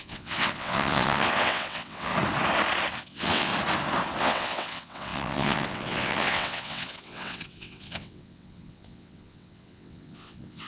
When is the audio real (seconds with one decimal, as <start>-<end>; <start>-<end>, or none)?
2.1-3.0; 3.5-4.2